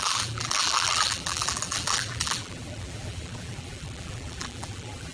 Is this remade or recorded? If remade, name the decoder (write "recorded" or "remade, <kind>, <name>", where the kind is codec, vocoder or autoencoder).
remade, vocoder, BigVGAN v2